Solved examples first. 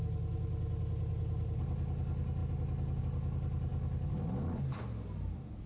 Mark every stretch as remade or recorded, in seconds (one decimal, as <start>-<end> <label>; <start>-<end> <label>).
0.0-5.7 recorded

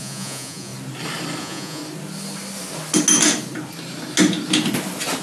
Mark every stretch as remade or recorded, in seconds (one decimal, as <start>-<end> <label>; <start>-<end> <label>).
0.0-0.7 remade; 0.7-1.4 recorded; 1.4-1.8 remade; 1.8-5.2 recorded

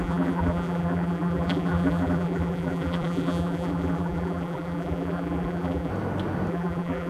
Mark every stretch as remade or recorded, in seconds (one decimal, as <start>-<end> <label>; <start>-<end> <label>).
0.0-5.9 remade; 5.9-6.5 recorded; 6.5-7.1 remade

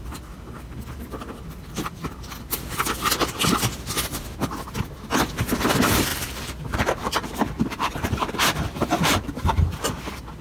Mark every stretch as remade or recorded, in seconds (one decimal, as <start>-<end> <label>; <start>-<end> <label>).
0.0-6.1 recorded; 6.1-9.9 remade; 9.9-10.4 recorded

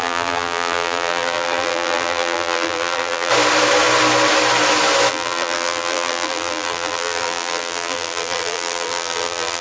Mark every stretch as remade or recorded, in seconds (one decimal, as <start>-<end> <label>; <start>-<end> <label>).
0.0-3.3 remade; 3.3-5.1 recorded; 5.1-9.6 remade

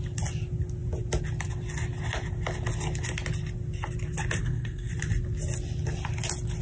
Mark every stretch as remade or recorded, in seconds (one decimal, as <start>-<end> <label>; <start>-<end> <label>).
0.0-4.4 recorded; 4.4-4.9 remade; 4.9-6.6 recorded

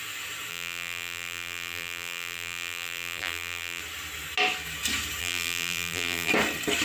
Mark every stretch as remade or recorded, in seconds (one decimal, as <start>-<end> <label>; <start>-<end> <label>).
0.0-0.5 recorded; 0.5-3.8 remade; 3.8-5.2 recorded; 5.2-6.3 remade; 6.3-6.8 recorded

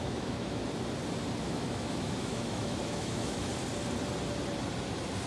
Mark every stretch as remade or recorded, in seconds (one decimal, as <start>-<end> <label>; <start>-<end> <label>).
0.0-0.6 remade; 0.6-1.4 recorded; 1.4-3.5 remade; 3.5-5.3 recorded